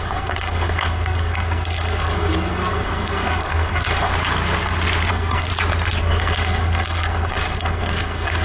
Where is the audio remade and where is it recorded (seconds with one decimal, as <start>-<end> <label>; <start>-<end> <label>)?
0.0-4.1 remade; 4.1-5.1 recorded; 5.1-5.5 remade; 5.5-6.0 recorded; 6.0-8.4 remade

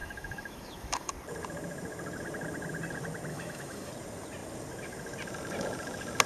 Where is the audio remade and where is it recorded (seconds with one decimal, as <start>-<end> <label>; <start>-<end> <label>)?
0.0-1.1 remade; 1.1-3.3 recorded; 3.3-3.9 remade; 3.9-6.3 recorded

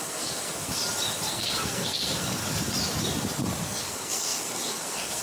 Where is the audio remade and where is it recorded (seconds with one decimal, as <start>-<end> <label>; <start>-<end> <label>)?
0.0-0.8 remade; 0.8-1.3 recorded; 1.3-2.4 remade; 2.4-3.6 recorded; 3.6-5.2 remade

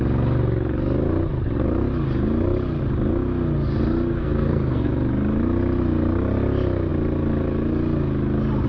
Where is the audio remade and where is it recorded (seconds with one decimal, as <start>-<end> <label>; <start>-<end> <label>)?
0.0-4.1 recorded; 4.1-4.9 remade; 4.9-8.7 recorded

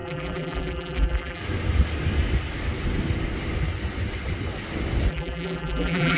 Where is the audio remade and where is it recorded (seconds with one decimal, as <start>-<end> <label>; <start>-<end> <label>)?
0.0-1.4 remade; 1.4-5.1 recorded; 5.1-6.2 remade

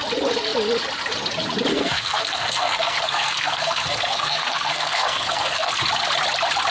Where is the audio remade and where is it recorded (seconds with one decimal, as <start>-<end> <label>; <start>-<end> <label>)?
0.0-1.7 recorded; 1.7-5.7 remade; 5.7-6.7 recorded

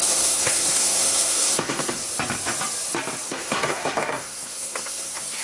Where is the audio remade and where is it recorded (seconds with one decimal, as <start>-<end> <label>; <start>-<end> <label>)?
0.0-2.0 remade; 2.0-3.2 recorded; 3.2-5.4 remade

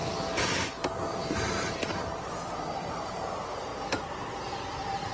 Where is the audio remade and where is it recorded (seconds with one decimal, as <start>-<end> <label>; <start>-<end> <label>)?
0.0-5.1 recorded